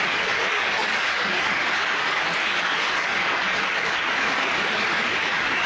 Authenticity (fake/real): fake